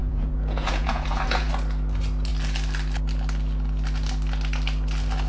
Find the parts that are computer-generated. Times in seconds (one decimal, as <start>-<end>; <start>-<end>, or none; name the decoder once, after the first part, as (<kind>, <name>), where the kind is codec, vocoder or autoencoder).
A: 0.0-1.5 (vocoder, Vocos)

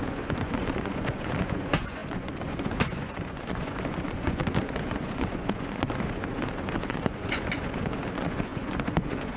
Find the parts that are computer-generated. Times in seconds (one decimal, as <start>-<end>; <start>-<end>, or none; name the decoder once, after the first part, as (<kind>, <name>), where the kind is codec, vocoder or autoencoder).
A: 0.0-9.4 (vocoder, Vocos)

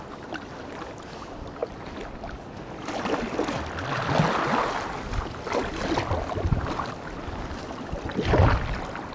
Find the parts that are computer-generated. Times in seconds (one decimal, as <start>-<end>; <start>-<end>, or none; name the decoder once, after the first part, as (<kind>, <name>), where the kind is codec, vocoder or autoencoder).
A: none

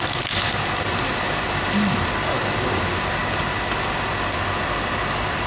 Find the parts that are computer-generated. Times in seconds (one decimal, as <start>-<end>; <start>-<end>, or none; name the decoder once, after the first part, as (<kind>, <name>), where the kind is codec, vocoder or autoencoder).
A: none

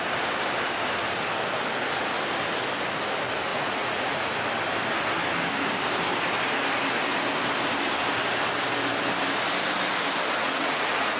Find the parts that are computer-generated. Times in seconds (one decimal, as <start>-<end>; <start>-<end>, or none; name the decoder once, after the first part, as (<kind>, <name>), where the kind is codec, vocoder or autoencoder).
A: 3.5-4.3 (vocoder, Vocos); 10.4-11.2

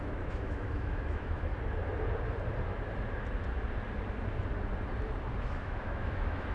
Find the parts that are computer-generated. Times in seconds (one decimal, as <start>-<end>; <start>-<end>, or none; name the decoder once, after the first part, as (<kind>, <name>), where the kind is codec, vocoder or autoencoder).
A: 0.0-1.5 (autoencoder, DAC-VAE); 5.4-6.5